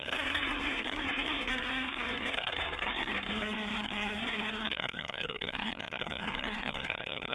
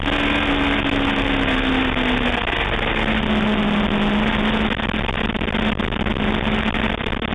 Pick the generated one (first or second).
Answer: first